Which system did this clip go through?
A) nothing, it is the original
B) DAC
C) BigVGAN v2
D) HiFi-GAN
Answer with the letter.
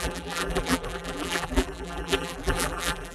C